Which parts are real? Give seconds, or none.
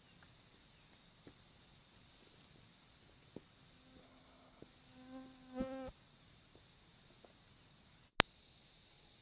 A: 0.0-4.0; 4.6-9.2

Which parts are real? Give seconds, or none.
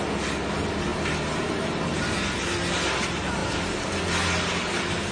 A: 0.0-5.1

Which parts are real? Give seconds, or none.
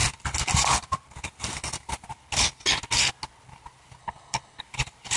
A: 0.0-4.0; 4.6-5.2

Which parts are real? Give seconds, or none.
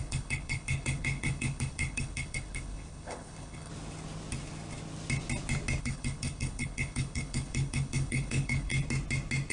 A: 3.7-5.8; 8.7-9.5